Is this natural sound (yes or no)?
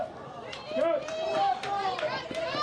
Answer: no